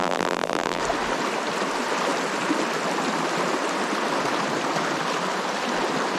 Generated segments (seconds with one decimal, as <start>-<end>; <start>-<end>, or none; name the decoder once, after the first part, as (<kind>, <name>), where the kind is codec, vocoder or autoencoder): 0.0-0.8 (vocoder, BigVGAN v2)